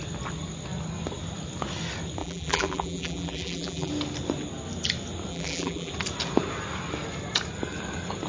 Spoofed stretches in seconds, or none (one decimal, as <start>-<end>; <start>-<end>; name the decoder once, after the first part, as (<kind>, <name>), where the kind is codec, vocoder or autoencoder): 2.2-3.9 (vocoder, BigVGAN v2); 5.3-5.9